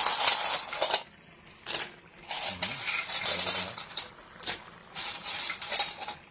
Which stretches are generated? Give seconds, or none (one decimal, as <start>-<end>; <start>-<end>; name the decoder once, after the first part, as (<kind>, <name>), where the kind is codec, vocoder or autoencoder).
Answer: 3.0-3.6 (vocoder, BigVGAN v2); 4.8-5.5